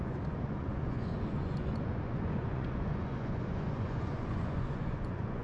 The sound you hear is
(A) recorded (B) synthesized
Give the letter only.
B